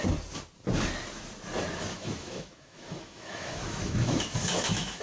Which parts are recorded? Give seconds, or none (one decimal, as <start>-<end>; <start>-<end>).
0.0-1.9